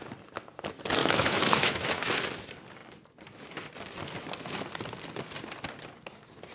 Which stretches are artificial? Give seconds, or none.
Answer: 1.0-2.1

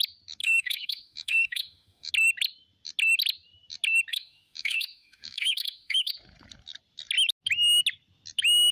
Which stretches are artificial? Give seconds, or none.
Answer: 0.4-2.1; 4.1-6.1

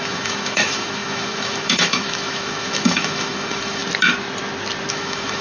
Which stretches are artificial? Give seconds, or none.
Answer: 0.0-3.8; 4.9-5.4

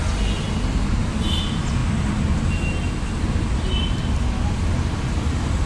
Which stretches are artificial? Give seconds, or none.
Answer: none

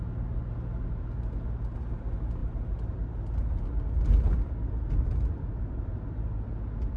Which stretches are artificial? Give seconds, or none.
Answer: none

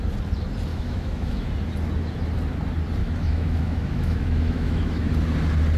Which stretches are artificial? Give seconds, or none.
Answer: 0.7-1.5; 3.0-5.1

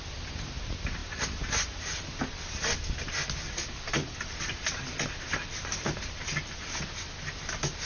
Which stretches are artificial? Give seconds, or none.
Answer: none